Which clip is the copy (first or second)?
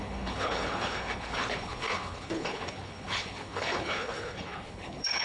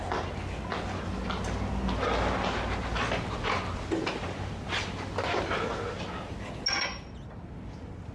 first